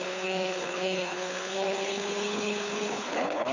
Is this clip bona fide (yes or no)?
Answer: no